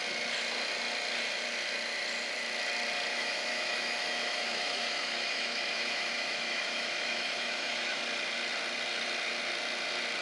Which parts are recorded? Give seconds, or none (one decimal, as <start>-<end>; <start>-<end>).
0.0-3.1; 8.0-10.2